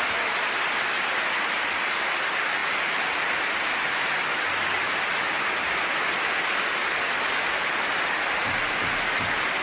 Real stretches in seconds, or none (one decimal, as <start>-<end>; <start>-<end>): 0.0-9.6